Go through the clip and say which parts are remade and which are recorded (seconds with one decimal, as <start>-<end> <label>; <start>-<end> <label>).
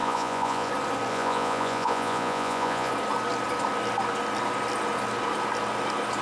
0.0-0.7 remade; 0.7-1.1 recorded; 1.1-2.9 remade; 2.9-6.2 recorded